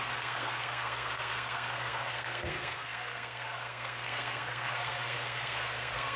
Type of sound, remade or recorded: remade